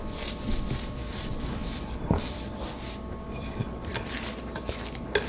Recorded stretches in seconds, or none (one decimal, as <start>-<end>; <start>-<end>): 0.0-5.3